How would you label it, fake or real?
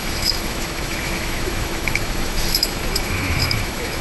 fake